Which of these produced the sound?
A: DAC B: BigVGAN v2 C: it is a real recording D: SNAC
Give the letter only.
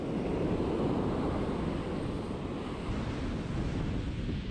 C